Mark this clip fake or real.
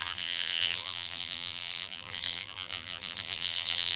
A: fake